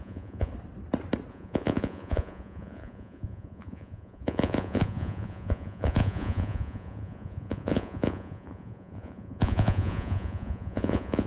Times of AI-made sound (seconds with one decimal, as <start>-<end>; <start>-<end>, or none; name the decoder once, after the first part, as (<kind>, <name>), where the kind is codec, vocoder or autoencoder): 0.0-0.5 (vocoder, Vocos); 1.3-11.3